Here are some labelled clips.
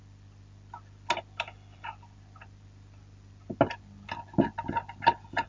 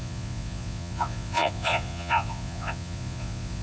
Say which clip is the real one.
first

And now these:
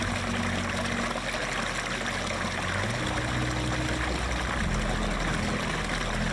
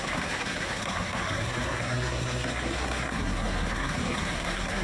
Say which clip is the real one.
first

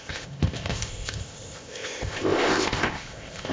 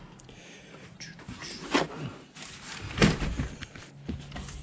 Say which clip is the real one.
second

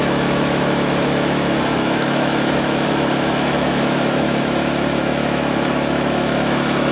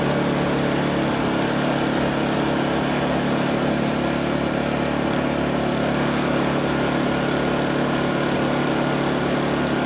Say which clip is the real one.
second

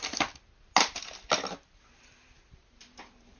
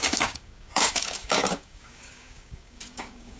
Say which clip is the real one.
first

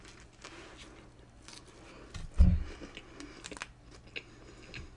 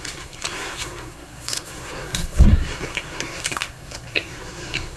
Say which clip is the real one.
first